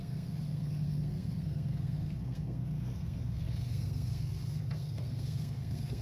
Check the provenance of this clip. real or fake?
fake